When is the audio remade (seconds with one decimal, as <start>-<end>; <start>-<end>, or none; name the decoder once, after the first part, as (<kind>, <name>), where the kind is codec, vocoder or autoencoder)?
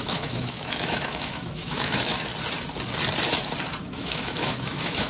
0.0-2.3 (autoencoder, DAC-VAE); 3.8-5.1